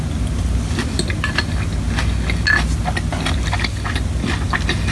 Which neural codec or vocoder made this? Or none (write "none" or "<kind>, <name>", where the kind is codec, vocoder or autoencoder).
none